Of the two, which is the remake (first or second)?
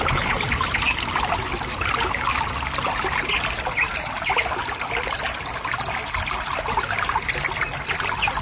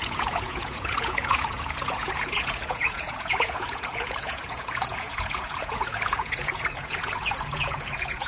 second